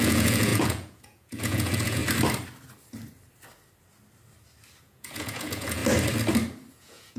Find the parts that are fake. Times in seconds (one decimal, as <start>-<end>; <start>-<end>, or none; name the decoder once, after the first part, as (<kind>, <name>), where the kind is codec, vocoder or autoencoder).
0.0-2.0 (vocoder, Vocos); 4.8-5.8; 6.7-7.2